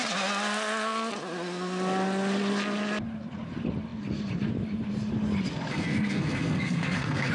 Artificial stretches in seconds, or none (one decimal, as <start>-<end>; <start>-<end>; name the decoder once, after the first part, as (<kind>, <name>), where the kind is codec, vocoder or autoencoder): 5.7-7.3 (codec, SNAC)